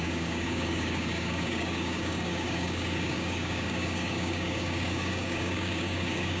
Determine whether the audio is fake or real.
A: fake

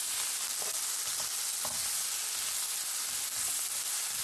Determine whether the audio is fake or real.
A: real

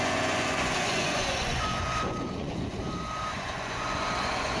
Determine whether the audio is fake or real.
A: fake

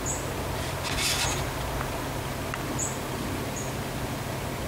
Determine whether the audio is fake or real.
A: real